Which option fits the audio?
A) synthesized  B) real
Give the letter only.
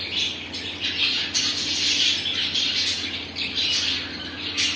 B